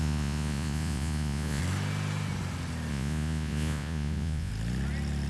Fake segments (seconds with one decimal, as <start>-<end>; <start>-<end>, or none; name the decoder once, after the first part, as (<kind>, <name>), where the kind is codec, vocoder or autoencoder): 0.0-1.6 (vocoder, Vocos); 2.9-4.5

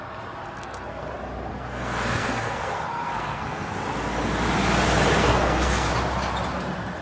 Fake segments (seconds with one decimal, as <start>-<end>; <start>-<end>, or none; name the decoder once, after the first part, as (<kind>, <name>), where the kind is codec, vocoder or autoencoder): 0.4-1.1 (codec, SNAC); 1.5-3.7; 5.2-5.9

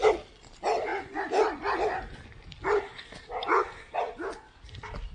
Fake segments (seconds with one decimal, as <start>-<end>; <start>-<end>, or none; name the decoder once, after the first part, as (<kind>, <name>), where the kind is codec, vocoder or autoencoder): none